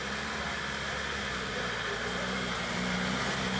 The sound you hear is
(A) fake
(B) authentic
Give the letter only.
B